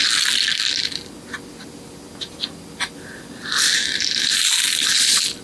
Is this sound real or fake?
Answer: real